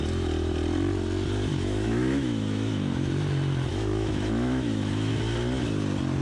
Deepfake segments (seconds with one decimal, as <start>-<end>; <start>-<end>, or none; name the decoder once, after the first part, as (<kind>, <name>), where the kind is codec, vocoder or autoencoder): 1.5-3.1 (autoencoder, DAC-VAE); 3.7-5.1